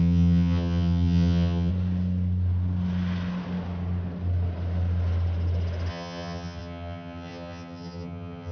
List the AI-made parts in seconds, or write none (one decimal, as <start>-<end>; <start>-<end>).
0.0-1.7; 5.9-8.5